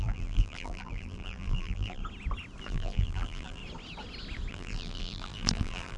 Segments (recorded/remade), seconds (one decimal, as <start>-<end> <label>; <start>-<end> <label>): 0.0-2.0 remade; 2.0-2.6 recorded; 2.6-3.6 remade; 3.6-4.5 recorded; 4.5-6.0 remade